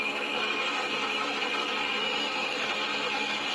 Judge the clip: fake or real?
fake